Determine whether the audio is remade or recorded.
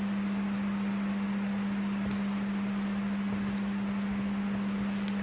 recorded